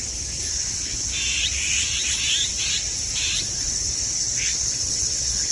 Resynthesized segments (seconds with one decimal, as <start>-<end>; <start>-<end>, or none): 0.5-1.1; 3.6-5.5